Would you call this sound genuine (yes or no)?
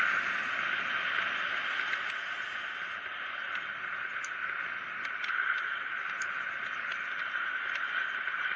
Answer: yes